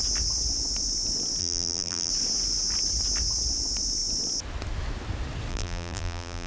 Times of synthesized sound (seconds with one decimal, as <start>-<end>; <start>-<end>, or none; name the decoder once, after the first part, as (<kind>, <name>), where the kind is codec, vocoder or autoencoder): 1.4-2.1 (vocoder, BigVGAN v2); 5.5-6.5